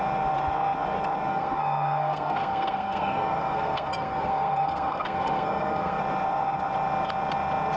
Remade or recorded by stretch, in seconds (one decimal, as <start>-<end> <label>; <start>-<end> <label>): 0.0-1.3 recorded; 1.3-6.0 remade; 6.0-7.8 recorded